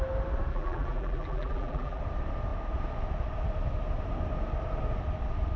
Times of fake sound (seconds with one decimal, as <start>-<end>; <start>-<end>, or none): 0.5-2.0